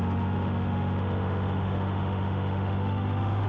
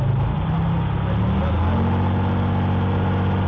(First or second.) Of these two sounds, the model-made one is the first